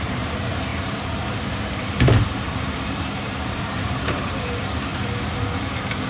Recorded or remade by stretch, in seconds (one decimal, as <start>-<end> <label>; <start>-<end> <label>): 0.0-4.9 remade; 4.9-6.1 recorded